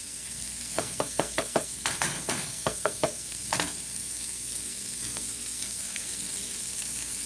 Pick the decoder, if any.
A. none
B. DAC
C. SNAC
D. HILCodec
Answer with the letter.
C